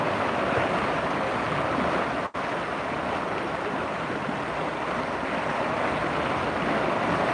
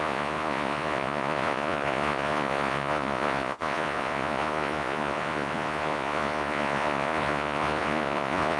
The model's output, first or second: second